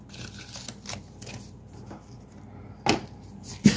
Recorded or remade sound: recorded